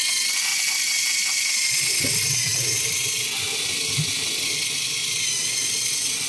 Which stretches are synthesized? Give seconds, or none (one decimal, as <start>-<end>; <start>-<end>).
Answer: 0.5-4.3

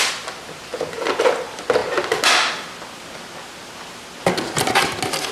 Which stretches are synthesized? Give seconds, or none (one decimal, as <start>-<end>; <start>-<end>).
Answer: none

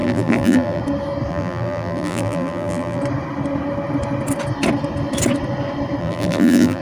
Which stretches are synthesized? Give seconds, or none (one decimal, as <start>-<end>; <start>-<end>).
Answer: 0.0-0.8; 1.3-3.0; 6.0-6.8

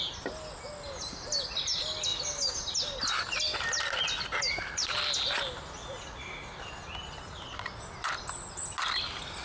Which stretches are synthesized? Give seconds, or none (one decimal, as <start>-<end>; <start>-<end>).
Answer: none